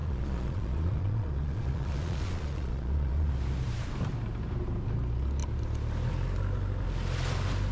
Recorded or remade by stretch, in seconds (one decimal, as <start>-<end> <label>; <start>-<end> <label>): 0.0-3.3 remade; 3.3-7.7 recorded